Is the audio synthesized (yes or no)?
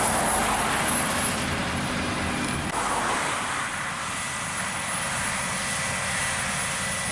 no